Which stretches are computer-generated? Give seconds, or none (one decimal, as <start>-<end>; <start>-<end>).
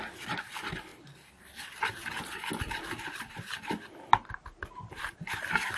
none